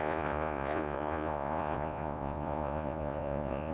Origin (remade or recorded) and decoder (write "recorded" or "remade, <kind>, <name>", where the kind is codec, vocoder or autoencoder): remade, vocoder, Vocos